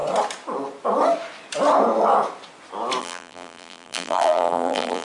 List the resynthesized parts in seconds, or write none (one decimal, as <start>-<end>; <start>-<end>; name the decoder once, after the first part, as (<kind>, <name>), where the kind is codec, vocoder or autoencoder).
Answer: 3.0-5.0 (vocoder, BigVGAN v2)